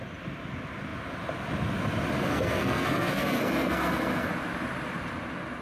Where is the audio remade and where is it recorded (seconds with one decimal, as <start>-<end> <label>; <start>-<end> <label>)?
0.0-2.2 recorded; 2.2-4.3 remade; 4.3-5.6 recorded